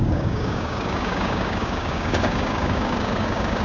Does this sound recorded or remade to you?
remade